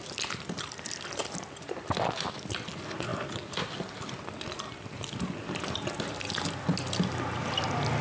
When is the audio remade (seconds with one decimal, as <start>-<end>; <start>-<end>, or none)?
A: none